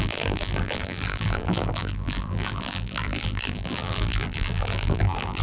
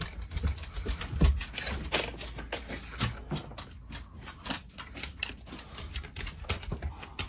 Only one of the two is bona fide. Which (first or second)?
second